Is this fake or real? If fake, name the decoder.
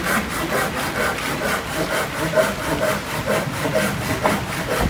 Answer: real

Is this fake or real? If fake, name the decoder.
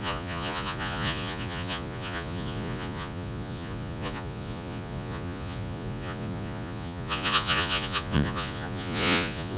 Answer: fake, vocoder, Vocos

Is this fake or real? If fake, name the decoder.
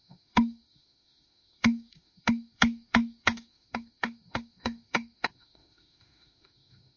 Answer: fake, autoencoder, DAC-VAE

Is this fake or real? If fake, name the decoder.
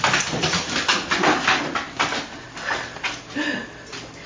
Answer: real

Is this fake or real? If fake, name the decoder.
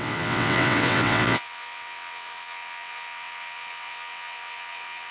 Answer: fake, vocoder, WaveNeXt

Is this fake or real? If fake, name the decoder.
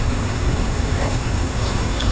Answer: fake, codec, SNAC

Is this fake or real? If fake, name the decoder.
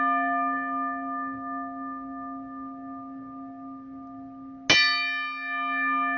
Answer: real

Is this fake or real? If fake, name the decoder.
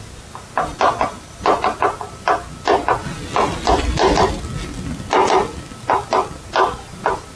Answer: real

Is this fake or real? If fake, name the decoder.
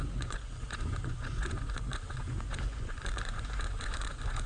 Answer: fake, vocoder, Vocos